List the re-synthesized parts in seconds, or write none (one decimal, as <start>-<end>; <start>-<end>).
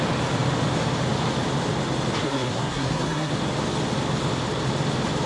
2.2-3.3